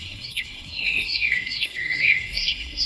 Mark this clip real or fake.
fake